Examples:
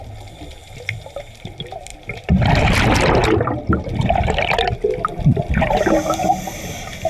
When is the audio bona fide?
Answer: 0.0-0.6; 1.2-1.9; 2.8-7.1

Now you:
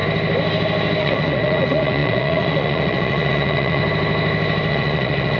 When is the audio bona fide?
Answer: 0.0-1.0; 3.8-4.7